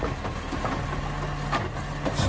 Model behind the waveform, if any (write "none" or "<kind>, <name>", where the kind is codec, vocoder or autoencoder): none